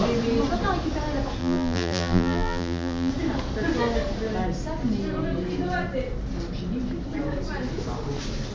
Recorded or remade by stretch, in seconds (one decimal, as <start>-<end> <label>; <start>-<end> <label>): 0.0-1.4 recorded; 1.4-3.1 remade; 3.1-8.5 recorded